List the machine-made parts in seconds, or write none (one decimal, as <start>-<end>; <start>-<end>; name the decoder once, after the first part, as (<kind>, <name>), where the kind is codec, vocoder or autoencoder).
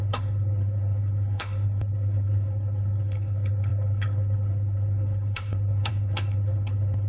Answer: 0.0-7.1 (codec, HILCodec)